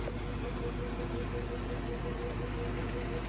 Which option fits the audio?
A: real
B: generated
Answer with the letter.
A